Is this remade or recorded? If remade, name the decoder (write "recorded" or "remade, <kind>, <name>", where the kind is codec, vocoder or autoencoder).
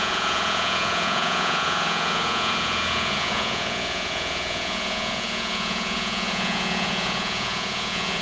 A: remade, vocoder, Vocos